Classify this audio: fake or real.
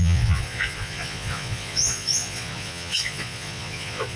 fake